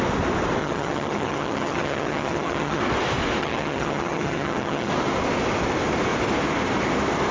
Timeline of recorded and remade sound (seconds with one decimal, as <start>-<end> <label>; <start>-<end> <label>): 0.0-0.6 recorded; 0.6-2.8 remade; 2.8-3.4 recorded; 3.4-4.9 remade; 4.9-7.3 recorded